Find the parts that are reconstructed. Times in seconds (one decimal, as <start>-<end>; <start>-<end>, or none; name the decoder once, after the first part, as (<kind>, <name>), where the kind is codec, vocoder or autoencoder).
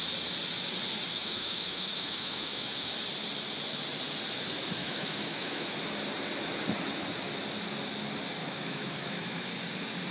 1.1-2.9 (autoencoder, DAC-VAE); 4.8-5.8; 8.4-9.5